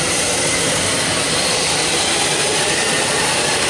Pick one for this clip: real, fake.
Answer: fake